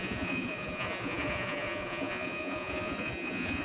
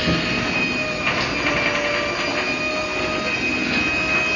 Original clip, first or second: second